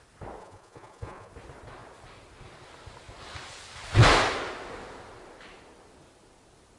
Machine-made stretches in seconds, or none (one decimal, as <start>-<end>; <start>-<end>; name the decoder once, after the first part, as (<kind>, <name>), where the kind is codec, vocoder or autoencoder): 0.4-1.3 (vocoder, Vocos)